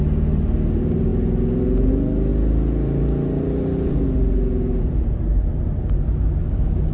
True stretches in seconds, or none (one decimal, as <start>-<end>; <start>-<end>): 0.0-6.9